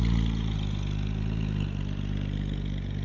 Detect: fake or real real